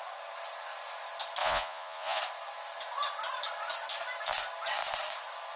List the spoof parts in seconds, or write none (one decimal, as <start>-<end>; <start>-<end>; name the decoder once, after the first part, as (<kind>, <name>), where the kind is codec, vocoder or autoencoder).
1.4-2.2 (vocoder, Vocos)